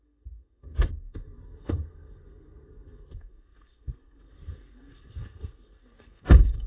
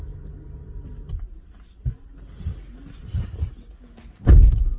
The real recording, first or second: second